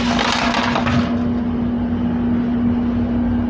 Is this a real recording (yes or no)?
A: yes